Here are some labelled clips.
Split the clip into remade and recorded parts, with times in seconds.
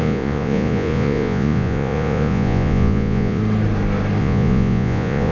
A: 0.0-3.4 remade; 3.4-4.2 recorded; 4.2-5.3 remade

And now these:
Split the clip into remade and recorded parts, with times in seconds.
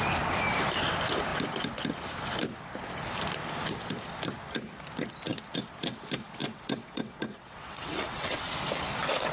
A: 0.0-6.4 recorded; 6.4-8.5 remade; 8.5-9.3 recorded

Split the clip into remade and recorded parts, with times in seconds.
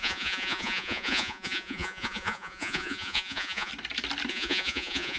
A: 0.0-3.7 remade; 3.7-4.3 recorded; 4.3-5.2 remade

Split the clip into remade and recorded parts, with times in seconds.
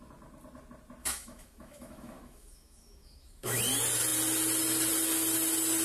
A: 0.0-1.0 recorded; 1.0-3.6 remade; 3.6-5.8 recorded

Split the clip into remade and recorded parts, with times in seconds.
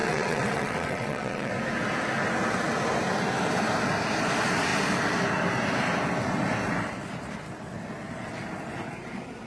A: 0.0-1.5 remade; 1.5-9.5 recorded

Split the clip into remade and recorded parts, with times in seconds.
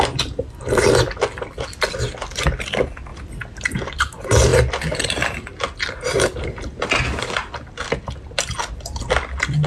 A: 0.0-9.7 recorded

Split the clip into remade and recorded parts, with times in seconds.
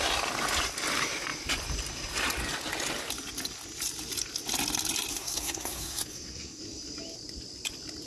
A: 0.0-5.1 recorded; 5.1-6.6 remade; 6.6-8.1 recorded